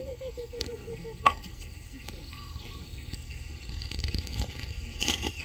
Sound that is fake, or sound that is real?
fake